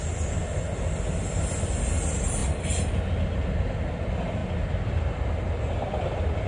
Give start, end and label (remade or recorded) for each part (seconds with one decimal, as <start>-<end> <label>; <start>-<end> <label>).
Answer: 0.0-6.5 recorded